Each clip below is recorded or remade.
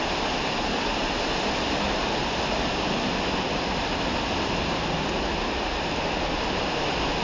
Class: recorded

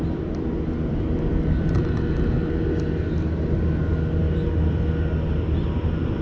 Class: recorded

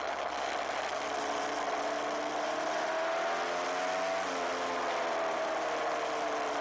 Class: recorded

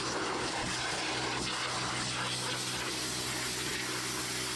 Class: recorded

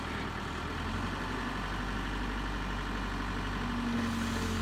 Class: recorded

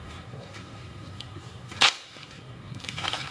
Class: remade